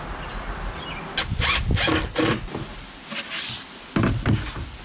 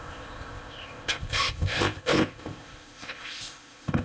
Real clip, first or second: first